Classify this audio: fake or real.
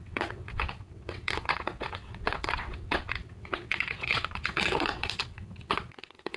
fake